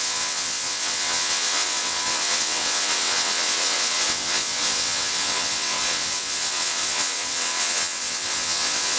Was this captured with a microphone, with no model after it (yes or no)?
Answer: no